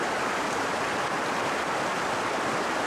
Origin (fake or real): real